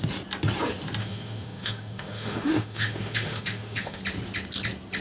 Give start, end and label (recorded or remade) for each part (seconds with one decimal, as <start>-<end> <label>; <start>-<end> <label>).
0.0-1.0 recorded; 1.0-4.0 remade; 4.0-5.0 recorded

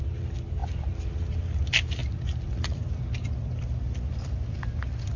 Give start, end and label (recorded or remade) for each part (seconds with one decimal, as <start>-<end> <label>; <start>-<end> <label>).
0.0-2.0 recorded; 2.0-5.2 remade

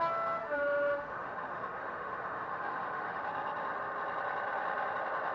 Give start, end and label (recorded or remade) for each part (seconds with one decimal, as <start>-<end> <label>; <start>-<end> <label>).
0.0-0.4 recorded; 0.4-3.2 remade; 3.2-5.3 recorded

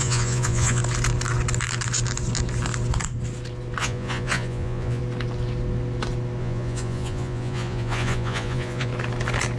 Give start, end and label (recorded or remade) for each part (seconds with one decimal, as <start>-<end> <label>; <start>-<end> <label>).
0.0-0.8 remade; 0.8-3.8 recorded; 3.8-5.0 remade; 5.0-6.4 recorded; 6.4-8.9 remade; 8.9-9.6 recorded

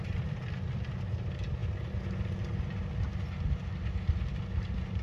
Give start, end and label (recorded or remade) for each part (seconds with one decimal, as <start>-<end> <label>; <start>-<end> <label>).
0.0-1.6 remade; 1.6-4.6 recorded; 4.6-5.0 remade